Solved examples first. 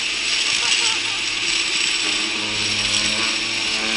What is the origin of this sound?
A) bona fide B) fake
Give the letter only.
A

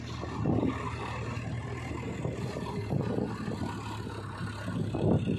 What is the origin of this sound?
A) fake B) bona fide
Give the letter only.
B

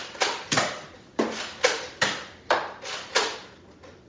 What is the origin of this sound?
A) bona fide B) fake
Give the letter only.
A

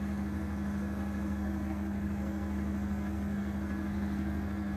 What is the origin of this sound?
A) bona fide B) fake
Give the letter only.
B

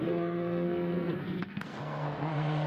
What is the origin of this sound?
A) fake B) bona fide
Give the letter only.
A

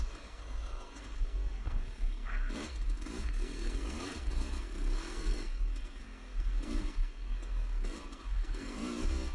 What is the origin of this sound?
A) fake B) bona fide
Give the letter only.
A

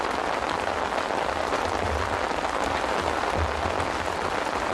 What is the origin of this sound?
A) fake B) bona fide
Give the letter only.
B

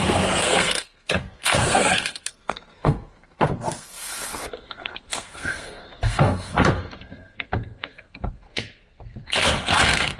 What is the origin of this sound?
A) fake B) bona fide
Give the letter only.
A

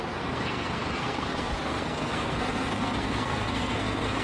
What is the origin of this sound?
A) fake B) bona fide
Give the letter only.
A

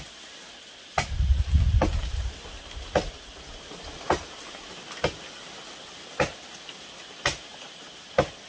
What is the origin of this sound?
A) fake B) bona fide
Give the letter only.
B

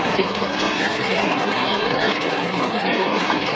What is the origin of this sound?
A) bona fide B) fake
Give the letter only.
B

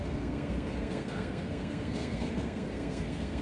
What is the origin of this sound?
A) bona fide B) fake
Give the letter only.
B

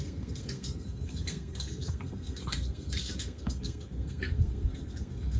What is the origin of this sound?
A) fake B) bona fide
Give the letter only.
A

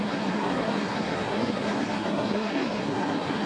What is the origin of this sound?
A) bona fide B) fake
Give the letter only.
B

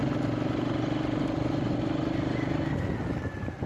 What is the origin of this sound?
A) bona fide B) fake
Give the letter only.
A